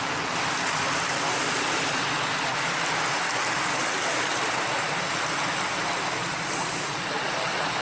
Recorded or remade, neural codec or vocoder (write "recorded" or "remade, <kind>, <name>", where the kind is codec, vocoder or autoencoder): recorded